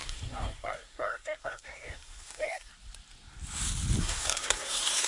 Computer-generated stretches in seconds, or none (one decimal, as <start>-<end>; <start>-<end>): 0.0-2.7; 4.0-5.1